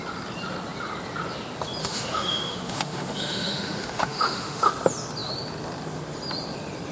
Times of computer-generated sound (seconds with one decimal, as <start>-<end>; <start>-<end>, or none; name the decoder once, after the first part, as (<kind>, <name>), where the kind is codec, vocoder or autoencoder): 1.8-4.7 (autoencoder, DAC-VAE)